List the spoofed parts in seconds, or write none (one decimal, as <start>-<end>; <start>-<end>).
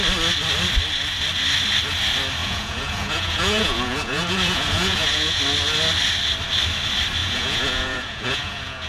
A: 2.4-5.4; 7.2-8.9